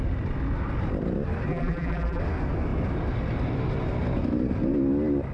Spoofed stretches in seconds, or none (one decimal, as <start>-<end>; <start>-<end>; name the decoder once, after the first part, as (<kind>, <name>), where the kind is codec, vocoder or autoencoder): 1.5-2.2 (vocoder, BigVGAN v2)